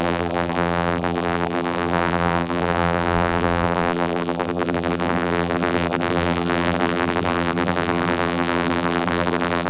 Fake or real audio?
fake